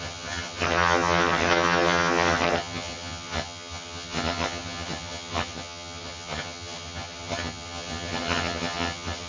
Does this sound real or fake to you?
fake